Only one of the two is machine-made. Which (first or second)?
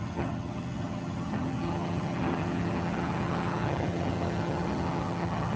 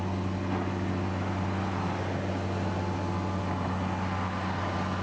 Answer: first